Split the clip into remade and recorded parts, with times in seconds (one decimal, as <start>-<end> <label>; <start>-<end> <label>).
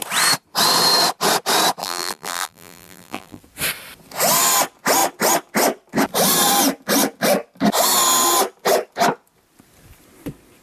0.0-1.8 recorded; 1.8-3.4 remade; 3.4-10.6 recorded